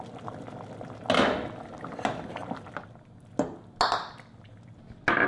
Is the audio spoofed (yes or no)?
no